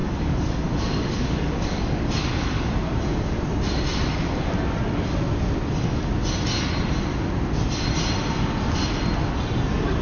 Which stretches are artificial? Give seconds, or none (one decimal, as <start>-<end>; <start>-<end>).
0.0-2.7